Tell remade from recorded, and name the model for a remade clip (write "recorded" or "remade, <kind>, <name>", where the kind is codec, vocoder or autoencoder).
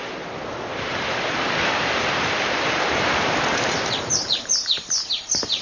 remade, vocoder, BigVGAN v2